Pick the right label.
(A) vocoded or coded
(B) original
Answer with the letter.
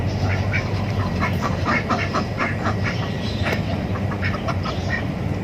A